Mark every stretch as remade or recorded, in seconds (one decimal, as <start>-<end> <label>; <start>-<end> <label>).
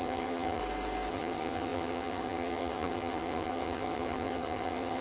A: 0.0-0.6 remade; 0.6-1.1 recorded; 1.1-5.0 remade